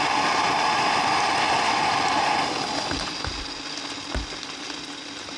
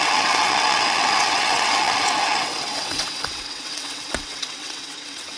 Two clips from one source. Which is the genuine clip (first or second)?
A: first